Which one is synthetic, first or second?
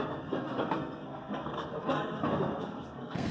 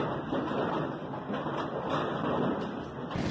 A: first